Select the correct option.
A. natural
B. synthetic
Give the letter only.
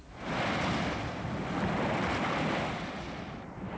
A